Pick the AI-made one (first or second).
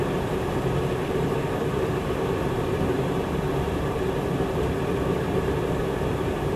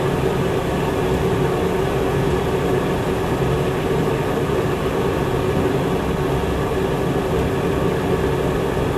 first